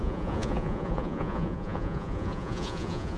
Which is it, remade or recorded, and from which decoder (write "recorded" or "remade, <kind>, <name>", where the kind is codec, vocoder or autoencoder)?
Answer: remade, vocoder, Vocos